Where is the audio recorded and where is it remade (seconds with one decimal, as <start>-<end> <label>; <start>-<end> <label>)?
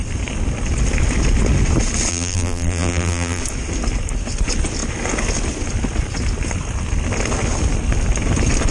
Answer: 0.0-2.1 recorded; 2.1-3.4 remade; 3.4-8.7 recorded